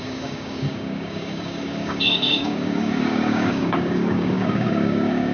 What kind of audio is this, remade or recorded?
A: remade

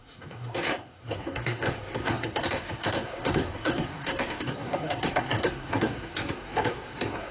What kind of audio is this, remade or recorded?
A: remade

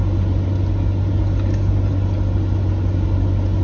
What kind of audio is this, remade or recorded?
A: recorded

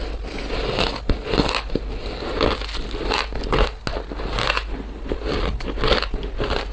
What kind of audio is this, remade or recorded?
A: recorded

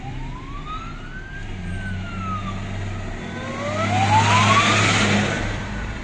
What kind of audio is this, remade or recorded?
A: recorded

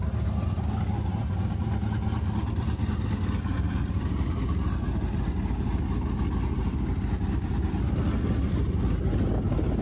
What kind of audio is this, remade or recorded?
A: recorded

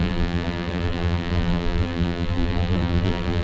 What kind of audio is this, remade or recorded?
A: remade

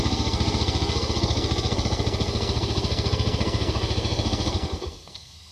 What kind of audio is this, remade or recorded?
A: remade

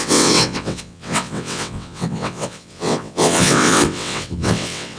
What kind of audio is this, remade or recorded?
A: remade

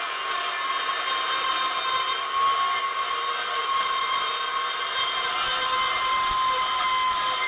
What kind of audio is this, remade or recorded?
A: recorded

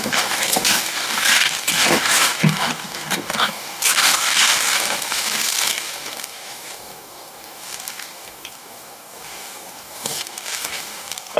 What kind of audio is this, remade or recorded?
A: remade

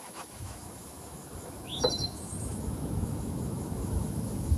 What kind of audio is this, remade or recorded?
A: remade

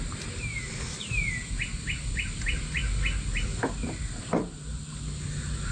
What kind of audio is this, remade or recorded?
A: recorded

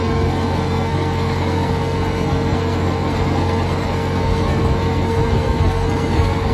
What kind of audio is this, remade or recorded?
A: remade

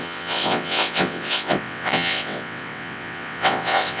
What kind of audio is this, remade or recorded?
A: remade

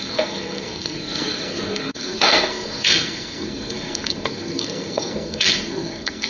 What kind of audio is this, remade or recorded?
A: remade